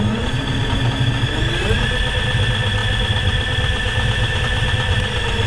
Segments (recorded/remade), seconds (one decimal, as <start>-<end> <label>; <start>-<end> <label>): 0.0-5.5 recorded